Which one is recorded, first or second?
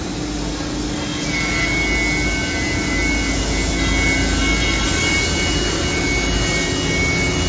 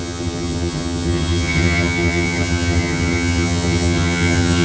first